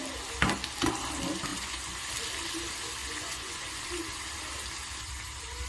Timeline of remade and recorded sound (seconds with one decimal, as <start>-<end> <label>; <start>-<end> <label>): 0.0-1.5 recorded; 1.5-2.1 remade; 2.1-3.0 recorded; 3.0-3.8 remade; 3.8-5.7 recorded

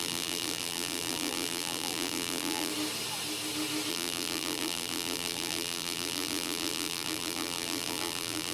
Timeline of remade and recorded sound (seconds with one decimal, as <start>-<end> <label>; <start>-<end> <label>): 0.0-2.7 remade; 2.7-3.9 recorded; 3.9-8.5 remade

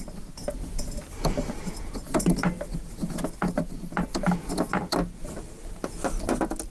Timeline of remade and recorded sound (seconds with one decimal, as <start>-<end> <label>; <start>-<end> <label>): 0.0-6.7 recorded

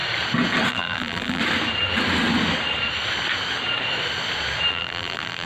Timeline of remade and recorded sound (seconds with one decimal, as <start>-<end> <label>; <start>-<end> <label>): 0.0-0.7 recorded; 0.7-1.4 remade; 1.4-4.7 recorded; 4.7-5.5 remade

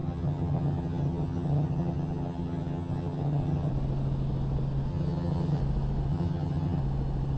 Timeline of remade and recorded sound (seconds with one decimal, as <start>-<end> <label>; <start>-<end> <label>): 0.0-3.7 remade; 3.7-4.9 recorded; 4.9-5.6 remade; 5.6-6.1 recorded; 6.1-6.8 remade; 6.8-7.4 recorded

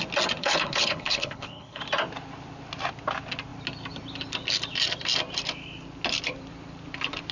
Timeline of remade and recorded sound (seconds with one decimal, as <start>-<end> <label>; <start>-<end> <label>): 0.0-0.4 recorded; 0.4-1.8 remade; 1.8-7.3 recorded

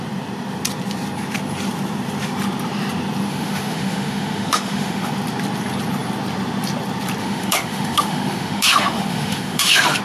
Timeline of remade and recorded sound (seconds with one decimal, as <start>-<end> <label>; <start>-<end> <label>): 0.0-3.3 recorded; 3.3-5.1 remade; 5.1-7.2 recorded; 7.2-10.0 remade